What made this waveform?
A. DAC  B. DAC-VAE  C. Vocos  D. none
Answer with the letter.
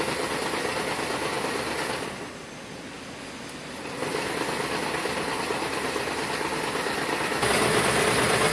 D